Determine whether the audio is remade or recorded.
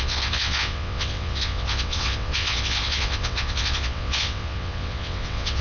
remade